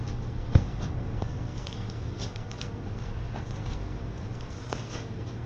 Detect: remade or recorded remade